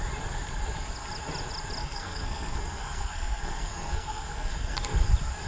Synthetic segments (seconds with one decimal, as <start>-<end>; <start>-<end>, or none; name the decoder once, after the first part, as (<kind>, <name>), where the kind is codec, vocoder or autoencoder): 1.8-5.1 (codec, SNAC)